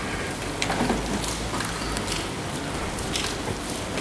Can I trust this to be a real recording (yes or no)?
yes